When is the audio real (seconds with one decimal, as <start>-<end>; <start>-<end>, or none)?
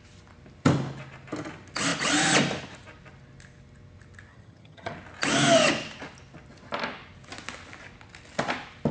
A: 0.0-4.3; 4.9-8.9